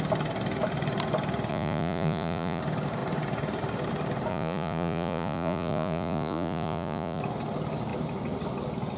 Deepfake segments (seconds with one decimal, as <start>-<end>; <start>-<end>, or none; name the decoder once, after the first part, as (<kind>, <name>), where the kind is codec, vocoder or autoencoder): 1.5-2.6 (vocoder, Vocos); 4.3-7.2